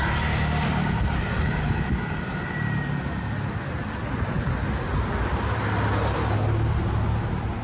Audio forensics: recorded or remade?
recorded